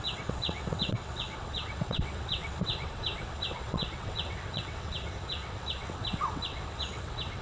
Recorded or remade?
remade